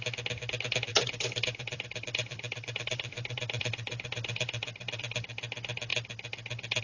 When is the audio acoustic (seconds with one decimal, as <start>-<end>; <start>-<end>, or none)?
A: 0.0-0.9; 5.0-6.8